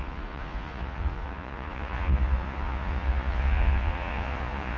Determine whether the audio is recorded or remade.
remade